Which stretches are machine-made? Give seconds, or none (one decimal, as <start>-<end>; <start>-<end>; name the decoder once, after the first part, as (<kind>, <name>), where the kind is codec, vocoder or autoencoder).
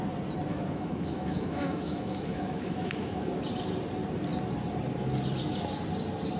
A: 0.5-3.4 (autoencoder, DAC-VAE)